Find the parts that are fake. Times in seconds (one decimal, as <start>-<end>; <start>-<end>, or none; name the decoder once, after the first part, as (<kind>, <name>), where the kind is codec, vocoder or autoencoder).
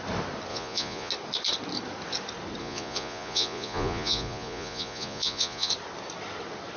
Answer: 0.5-1.1 (vocoder, Vocos); 2.6-5.7